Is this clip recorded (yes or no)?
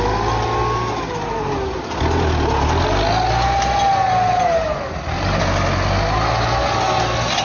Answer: yes